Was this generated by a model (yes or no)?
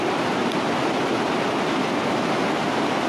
no